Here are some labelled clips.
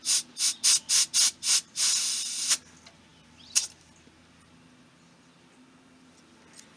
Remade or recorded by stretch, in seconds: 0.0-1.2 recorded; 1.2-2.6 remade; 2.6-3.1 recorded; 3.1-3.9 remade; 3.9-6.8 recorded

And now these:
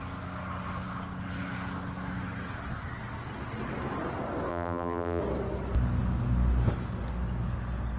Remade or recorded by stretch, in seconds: 0.0-4.5 recorded; 4.5-5.2 remade; 5.2-8.0 recorded

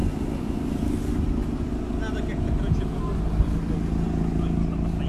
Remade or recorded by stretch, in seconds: 0.0-5.1 recorded

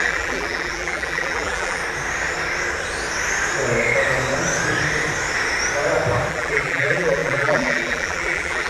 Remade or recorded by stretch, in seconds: 0.0-1.8 remade; 1.8-6.3 recorded; 6.3-8.7 remade

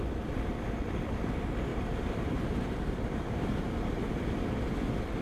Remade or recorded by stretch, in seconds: 0.0-1.7 recorded; 1.7-4.1 remade; 4.1-5.2 recorded

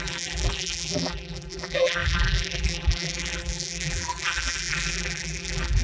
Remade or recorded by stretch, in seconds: 0.0-5.8 remade